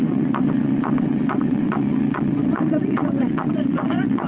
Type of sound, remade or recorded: remade